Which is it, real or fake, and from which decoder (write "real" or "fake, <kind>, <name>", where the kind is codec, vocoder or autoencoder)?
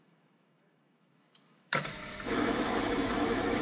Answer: fake, autoencoder, DAC-VAE